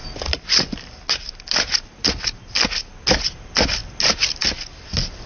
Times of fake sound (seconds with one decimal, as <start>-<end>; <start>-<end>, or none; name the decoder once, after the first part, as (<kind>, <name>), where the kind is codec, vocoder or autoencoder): none